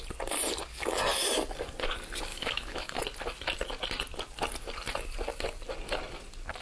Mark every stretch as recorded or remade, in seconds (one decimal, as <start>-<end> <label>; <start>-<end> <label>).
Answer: 0.0-2.3 recorded; 2.3-3.0 remade; 3.0-6.6 recorded